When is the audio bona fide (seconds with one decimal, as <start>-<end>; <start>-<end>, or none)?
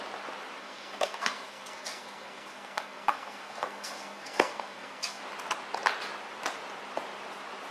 0.0-0.6; 5.2-7.7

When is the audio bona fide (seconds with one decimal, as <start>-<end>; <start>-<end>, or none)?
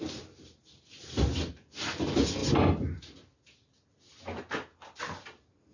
0.0-5.7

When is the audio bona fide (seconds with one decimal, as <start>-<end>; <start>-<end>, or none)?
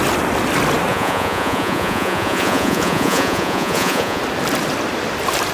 0.0-0.9; 4.2-5.5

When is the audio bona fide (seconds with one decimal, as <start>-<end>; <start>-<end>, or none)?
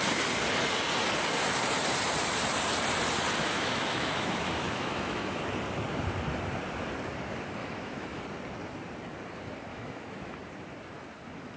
0.0-3.5; 5.4-7.6; 8.2-9.7; 10.4-11.6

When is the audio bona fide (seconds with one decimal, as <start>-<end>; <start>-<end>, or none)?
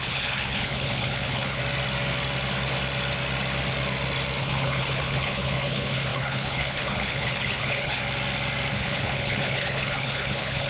1.6-4.4; 8.0-8.7